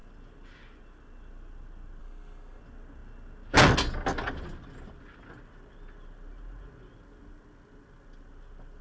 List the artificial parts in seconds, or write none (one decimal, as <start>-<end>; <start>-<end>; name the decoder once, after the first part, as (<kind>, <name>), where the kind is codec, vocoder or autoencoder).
2.0-2.6 (codec, SNAC)

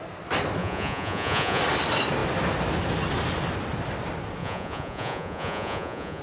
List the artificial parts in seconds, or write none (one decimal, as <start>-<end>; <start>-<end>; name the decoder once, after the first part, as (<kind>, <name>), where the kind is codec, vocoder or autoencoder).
0.6-1.6 (vocoder, Vocos); 4.4-6.2

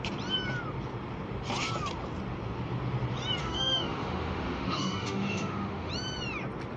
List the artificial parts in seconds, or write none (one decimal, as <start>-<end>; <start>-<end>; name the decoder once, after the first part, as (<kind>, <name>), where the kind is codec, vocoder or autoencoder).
3.4-5.9 (autoencoder, DAC-VAE)

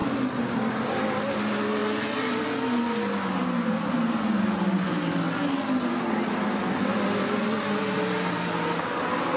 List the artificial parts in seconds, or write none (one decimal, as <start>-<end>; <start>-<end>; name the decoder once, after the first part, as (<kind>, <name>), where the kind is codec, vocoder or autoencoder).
none

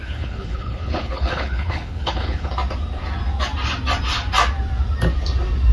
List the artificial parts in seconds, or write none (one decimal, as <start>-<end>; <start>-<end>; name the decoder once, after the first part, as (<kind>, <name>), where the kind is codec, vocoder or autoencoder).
0.0-2.5 (codec, HILCodec)

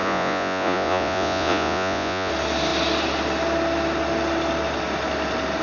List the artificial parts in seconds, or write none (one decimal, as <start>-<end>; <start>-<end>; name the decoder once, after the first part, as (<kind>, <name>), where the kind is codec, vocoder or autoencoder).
0.0-2.3 (vocoder, Vocos)

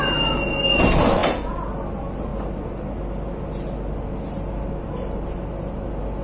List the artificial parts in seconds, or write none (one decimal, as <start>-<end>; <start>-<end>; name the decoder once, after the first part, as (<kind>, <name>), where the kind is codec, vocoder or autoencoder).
none